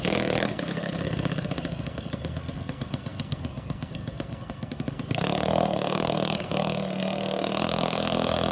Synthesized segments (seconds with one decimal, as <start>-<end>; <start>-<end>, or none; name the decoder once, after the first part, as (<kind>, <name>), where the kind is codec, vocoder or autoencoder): 0.0-8.5 (codec, SNAC)